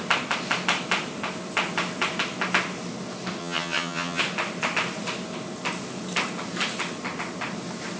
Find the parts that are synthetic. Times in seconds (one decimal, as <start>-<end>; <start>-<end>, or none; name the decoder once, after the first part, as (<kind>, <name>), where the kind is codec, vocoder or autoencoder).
3.4-4.2 (vocoder, HiFi-GAN)